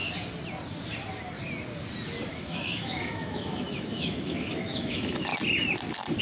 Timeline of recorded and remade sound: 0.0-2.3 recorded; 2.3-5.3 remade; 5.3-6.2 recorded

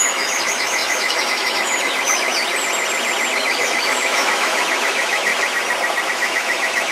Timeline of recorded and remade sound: 0.0-2.3 remade; 2.3-3.3 recorded; 3.3-5.3 remade; 5.3-6.1 recorded; 6.1-6.9 remade

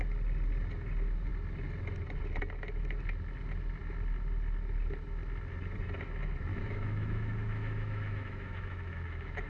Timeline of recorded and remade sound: 0.0-6.5 recorded; 6.5-9.5 remade

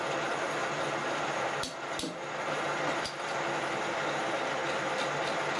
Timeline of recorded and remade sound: 0.0-5.6 recorded